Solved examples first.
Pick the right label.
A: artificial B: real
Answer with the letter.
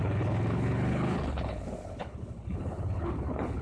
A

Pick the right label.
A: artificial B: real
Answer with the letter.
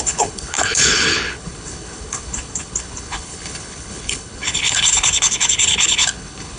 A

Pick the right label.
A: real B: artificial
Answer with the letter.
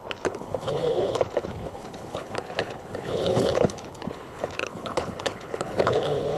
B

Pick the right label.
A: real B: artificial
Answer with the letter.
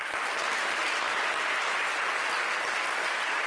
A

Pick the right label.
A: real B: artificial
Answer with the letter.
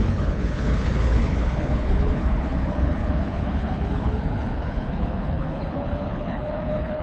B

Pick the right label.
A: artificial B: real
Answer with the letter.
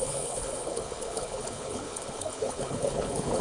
A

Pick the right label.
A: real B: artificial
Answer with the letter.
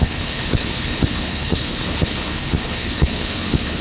B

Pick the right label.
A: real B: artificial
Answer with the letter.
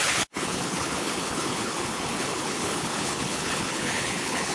B